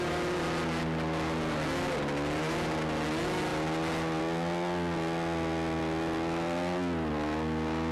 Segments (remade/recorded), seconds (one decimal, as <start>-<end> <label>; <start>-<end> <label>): 0.0-7.9 recorded

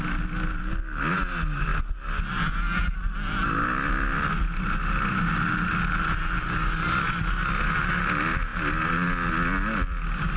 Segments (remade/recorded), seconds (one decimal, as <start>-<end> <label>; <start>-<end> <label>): 0.0-10.4 recorded

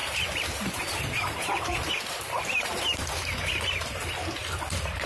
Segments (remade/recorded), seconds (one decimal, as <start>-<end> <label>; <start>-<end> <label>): 0.0-3.1 remade; 3.1-5.1 recorded

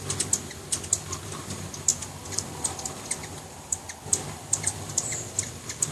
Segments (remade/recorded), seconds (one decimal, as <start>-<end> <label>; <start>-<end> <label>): 0.0-1.9 recorded; 1.9-5.4 remade; 5.4-5.9 recorded